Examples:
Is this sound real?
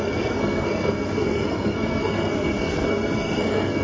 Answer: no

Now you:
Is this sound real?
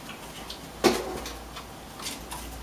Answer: yes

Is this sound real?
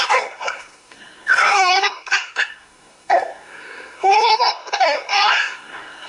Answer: no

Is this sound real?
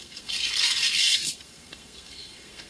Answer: no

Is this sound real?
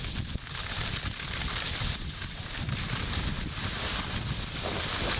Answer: yes